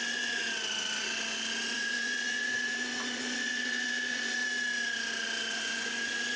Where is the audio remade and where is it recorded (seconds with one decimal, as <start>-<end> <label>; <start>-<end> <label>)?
0.0-0.4 remade; 0.4-1.7 recorded; 1.7-4.4 remade; 4.4-5.5 recorded; 5.5-6.4 remade